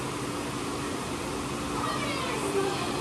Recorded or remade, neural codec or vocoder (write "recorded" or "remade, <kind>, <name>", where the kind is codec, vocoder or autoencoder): recorded